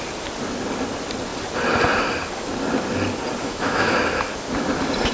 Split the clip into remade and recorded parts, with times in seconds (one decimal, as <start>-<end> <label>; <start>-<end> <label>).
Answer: 0.0-3.4 recorded; 3.4-4.0 remade; 4.0-5.1 recorded